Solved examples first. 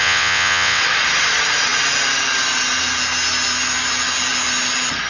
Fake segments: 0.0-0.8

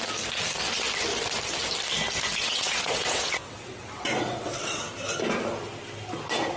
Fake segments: 2.4-4.8

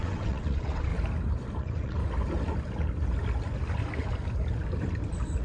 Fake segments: 0.0-0.9; 1.6-2.0

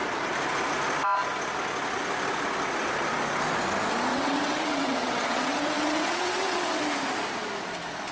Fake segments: 4.1-6.8

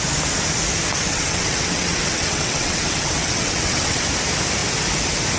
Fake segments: 0.9-4.1